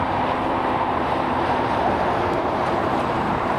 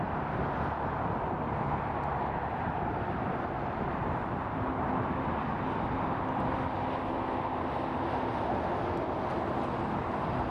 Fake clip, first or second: first